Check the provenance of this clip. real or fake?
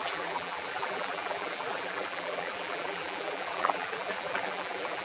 fake